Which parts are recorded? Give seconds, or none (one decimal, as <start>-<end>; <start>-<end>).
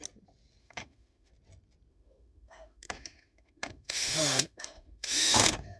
0.0-0.6; 1.3-1.9